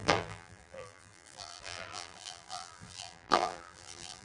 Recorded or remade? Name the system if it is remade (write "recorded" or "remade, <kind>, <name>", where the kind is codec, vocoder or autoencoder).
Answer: remade, vocoder, BigVGAN v2